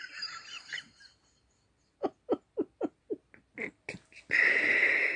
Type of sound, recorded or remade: recorded